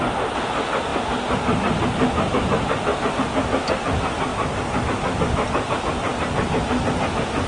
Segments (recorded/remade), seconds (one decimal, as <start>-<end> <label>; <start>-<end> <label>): 0.0-7.5 recorded